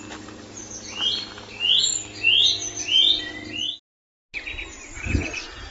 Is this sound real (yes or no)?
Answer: yes